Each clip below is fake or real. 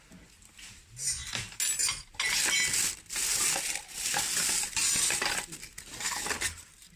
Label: real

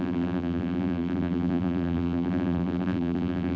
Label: fake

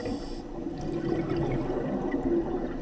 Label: real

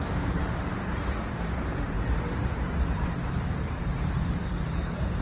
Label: fake